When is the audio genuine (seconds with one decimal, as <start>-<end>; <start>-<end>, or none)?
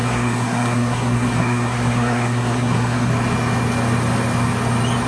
3.1-5.1